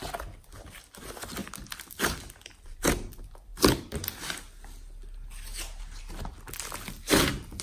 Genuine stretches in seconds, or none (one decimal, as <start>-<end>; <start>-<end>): 0.0-1.4; 2.0-7.6